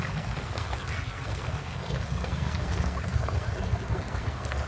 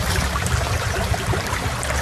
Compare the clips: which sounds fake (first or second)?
first